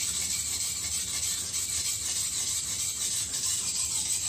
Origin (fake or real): real